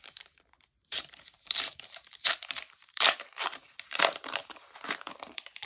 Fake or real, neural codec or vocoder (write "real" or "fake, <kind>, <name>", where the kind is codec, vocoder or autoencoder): fake, vocoder, BigVGAN v2